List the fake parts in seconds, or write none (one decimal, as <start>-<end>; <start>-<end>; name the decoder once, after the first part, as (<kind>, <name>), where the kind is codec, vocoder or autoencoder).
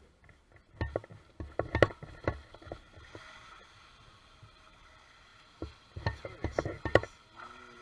none